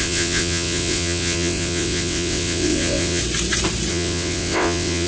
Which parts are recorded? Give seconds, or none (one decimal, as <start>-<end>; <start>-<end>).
3.2-3.9